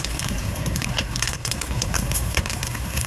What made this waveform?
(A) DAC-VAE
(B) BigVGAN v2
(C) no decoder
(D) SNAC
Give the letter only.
D